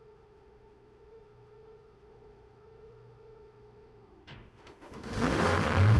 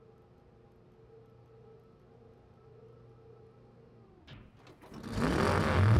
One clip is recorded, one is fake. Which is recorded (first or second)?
second